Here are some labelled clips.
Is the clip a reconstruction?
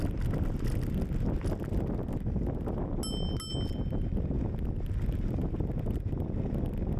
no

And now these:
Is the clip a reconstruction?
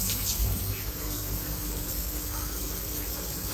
yes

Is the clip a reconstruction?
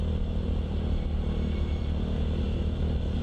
no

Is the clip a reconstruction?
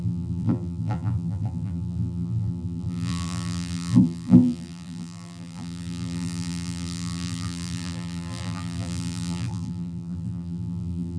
yes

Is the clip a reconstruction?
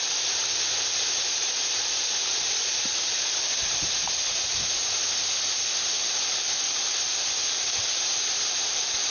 no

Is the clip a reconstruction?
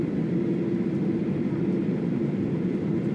yes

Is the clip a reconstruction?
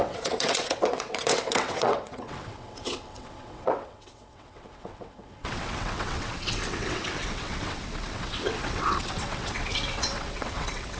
yes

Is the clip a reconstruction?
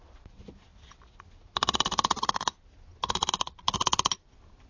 no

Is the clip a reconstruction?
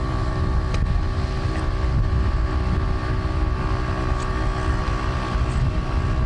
no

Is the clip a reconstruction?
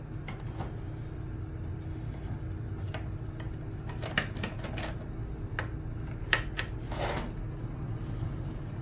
no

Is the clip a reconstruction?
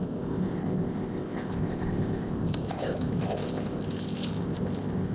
yes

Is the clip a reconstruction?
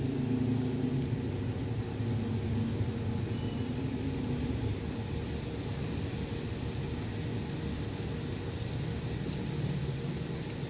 no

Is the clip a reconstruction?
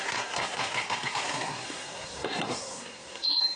yes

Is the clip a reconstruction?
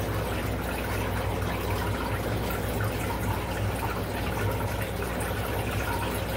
no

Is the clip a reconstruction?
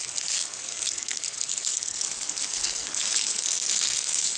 yes